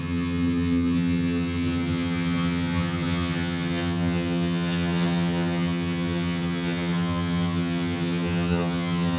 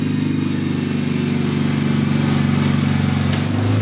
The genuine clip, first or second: second